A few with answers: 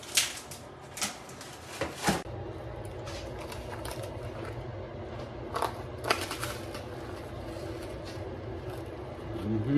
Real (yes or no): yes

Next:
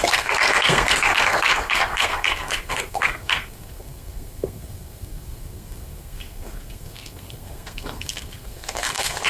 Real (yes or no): no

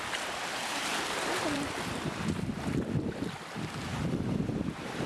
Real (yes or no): no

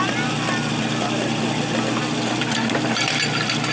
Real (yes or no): yes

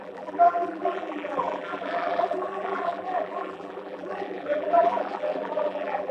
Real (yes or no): no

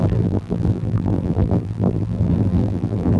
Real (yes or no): no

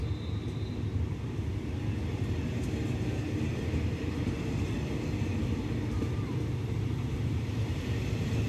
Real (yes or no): yes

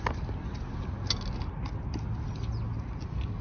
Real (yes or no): yes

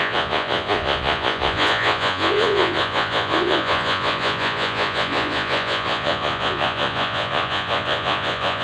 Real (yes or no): no